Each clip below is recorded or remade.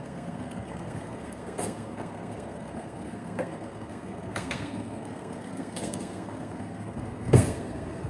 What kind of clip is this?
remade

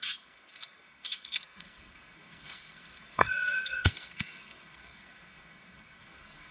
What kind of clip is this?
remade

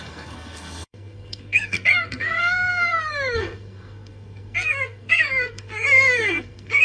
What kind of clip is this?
remade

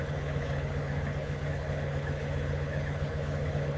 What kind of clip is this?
remade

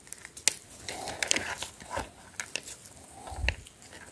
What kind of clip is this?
recorded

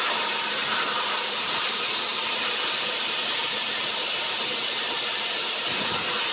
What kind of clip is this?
remade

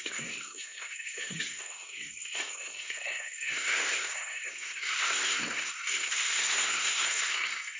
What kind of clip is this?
remade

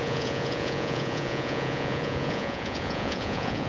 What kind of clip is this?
remade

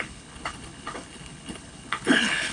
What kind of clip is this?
remade